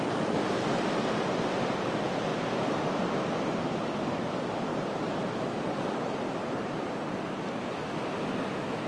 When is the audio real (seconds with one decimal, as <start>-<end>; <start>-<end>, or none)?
0.0-4.7; 7.2-8.9